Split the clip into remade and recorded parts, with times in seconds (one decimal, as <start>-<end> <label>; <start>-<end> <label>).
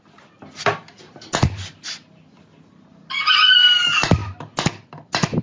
0.0-5.4 recorded